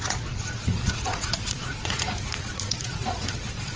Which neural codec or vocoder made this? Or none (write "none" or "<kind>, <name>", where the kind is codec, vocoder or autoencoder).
vocoder, Vocos